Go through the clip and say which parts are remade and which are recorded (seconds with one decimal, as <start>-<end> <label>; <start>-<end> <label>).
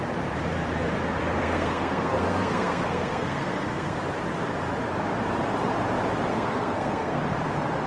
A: 0.0-1.4 recorded; 1.4-4.0 remade; 4.0-6.3 recorded; 6.3-7.2 remade; 7.2-7.9 recorded